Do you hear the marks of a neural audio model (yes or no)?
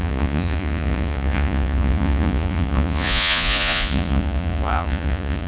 yes